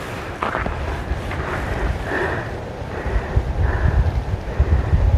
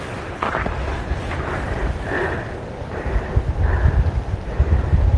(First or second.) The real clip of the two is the second